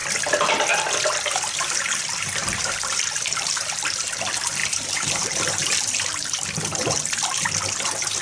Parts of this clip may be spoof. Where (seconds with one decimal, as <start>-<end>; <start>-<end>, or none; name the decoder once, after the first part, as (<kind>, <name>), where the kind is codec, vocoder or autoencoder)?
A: 1.6-8.2 (vocoder, BigVGAN v2)